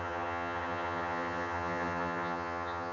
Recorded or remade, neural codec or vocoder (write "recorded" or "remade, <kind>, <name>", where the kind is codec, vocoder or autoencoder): remade, vocoder, HiFi-GAN